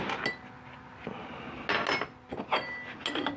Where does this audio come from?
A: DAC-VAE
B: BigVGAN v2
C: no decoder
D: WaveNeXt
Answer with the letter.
C